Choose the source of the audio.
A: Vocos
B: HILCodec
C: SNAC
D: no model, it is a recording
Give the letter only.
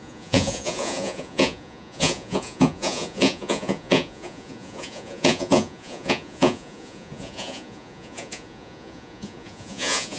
A